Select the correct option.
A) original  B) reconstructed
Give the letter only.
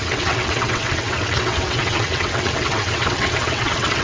B